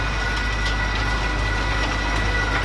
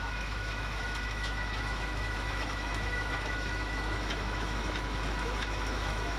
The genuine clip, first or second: first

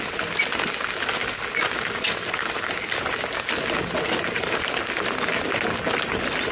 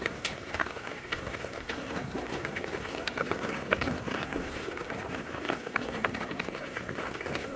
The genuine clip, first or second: first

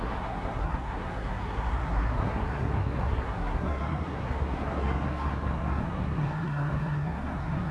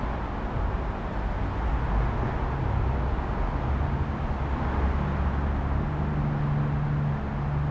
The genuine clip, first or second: second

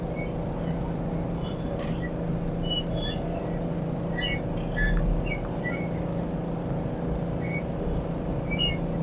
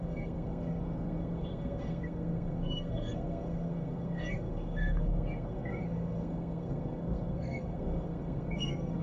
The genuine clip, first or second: first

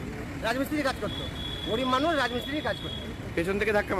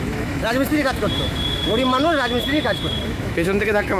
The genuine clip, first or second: first